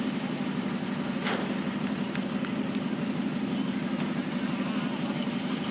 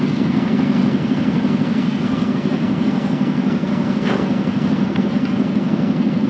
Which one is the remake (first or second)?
second